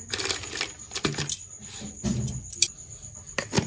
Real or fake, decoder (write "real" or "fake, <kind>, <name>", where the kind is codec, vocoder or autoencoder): real